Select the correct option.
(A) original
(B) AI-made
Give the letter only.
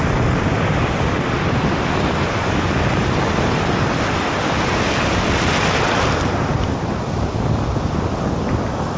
A